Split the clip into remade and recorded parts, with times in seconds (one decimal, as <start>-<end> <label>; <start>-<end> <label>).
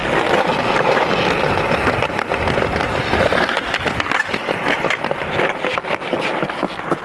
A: 0.0-7.0 recorded